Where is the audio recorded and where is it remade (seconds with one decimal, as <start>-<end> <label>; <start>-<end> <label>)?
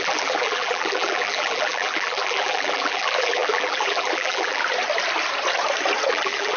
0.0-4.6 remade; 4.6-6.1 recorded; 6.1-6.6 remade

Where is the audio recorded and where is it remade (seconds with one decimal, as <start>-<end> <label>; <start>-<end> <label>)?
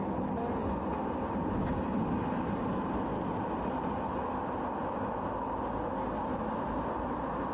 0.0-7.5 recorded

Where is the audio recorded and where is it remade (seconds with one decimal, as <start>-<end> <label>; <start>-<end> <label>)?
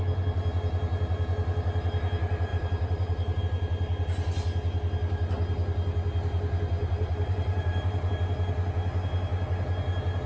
0.0-2.5 recorded; 2.5-3.4 remade; 3.4-6.8 recorded; 6.8-8.1 remade; 8.1-10.3 recorded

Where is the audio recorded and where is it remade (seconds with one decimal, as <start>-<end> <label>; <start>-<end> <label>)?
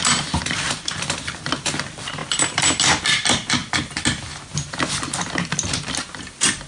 0.0-6.7 recorded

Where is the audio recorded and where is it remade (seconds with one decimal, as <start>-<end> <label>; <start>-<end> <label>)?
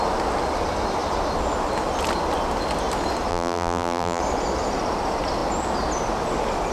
0.0-3.3 recorded; 3.3-4.2 remade; 4.2-6.7 recorded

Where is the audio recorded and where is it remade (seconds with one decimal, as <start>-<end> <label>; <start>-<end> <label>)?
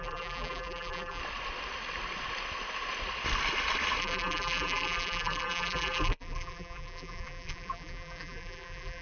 0.0-1.2 remade; 1.2-4.0 recorded; 4.0-9.0 remade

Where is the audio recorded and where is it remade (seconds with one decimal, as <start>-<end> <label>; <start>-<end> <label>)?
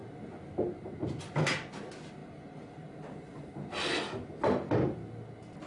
0.0-2.2 recorded; 2.2-3.4 remade; 3.4-5.7 recorded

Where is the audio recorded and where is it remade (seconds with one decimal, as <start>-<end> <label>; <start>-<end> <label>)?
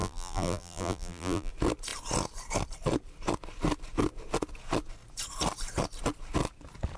0.0-1.5 remade; 1.5-7.0 recorded